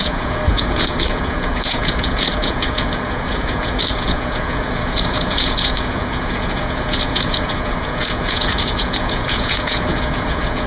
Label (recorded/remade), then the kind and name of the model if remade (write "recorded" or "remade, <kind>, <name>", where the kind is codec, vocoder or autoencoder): remade, vocoder, Vocos